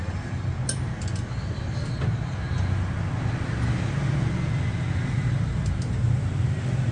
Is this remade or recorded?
recorded